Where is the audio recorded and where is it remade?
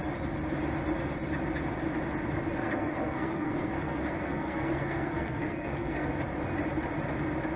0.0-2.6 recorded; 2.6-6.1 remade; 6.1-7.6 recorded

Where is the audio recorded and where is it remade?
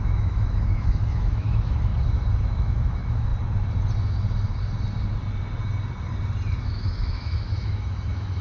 0.0-1.9 remade; 1.9-2.4 recorded; 2.4-3.3 remade; 3.3-6.6 recorded; 6.6-8.4 remade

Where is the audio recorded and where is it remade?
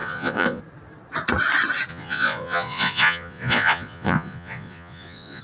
0.0-0.6 remade; 0.6-1.9 recorded; 1.9-5.4 remade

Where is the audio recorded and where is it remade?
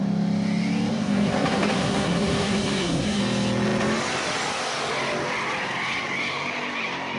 0.0-0.9 recorded; 0.9-3.2 remade; 3.2-7.2 recorded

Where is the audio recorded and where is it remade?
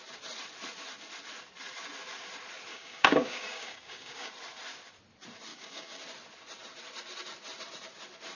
0.0-2.7 recorded; 2.7-4.3 remade; 4.3-5.5 recorded; 5.5-6.0 remade; 6.0-8.3 recorded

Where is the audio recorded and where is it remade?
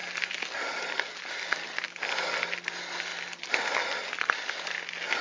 0.0-5.2 recorded